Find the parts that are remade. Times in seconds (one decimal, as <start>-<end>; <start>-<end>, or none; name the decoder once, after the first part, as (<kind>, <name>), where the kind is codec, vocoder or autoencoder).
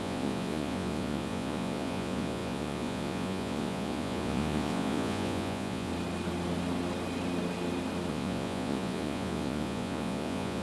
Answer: 0.0-5.9 (vocoder, Vocos); 8.1-10.6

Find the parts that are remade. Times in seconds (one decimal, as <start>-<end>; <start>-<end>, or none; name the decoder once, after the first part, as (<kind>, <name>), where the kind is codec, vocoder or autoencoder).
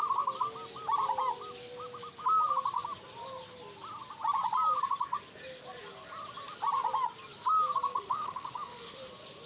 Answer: 7.9-9.1 (autoencoder, DAC-VAE)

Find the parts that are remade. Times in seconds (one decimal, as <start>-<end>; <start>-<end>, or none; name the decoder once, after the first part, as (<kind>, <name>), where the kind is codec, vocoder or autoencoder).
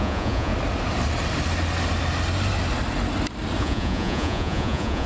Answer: 0.0-0.5 (vocoder, Vocos); 3.6-5.1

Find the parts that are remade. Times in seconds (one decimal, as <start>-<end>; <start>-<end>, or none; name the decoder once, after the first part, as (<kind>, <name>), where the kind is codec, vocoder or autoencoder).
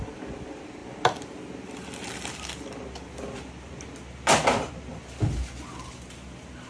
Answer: none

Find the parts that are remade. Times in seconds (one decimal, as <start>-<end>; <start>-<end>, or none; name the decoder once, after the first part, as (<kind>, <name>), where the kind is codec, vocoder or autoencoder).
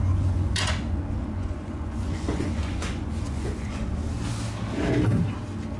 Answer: 0.0-3.8 (vocoder, Vocos)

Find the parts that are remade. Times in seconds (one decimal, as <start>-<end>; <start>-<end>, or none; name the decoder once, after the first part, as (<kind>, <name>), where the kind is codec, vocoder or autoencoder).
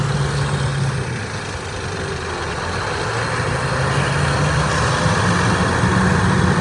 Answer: none